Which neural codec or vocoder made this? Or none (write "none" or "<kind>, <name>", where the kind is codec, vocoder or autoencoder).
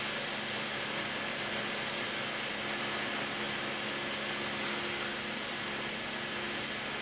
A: none